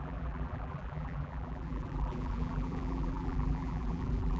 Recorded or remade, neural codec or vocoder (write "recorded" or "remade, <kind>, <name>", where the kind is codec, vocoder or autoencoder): remade, vocoder, BigVGAN v2